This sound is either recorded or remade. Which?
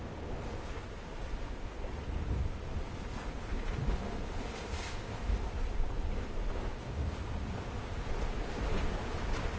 recorded